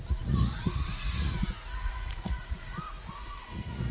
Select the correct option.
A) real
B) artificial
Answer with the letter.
B